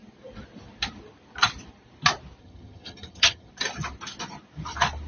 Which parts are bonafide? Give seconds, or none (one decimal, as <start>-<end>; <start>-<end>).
0.0-2.4; 3.5-5.1

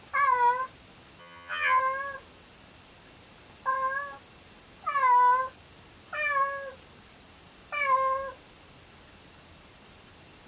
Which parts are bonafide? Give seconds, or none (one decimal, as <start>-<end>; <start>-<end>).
0.0-1.2; 1.8-10.5

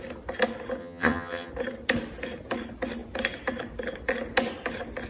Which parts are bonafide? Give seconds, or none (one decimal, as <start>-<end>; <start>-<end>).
0.0-0.8; 1.5-5.1

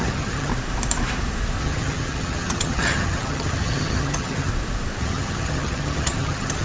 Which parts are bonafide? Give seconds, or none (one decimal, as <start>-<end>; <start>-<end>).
0.5-1.6; 4.5-5.0